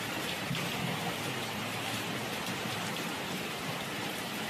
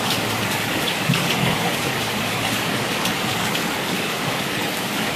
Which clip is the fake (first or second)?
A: second